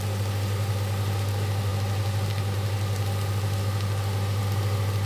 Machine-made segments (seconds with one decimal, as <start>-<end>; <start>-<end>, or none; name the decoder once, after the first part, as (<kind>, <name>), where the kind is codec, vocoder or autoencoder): none